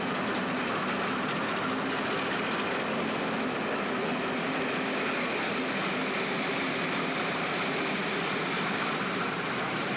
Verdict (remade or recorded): recorded